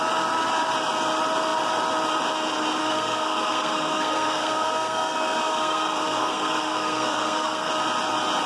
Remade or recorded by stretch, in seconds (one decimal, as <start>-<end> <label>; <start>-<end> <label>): 0.0-2.8 recorded; 2.8-7.7 remade; 7.7-8.5 recorded